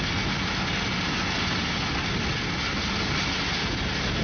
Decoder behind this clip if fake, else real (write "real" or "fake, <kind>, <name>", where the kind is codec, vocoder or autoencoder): real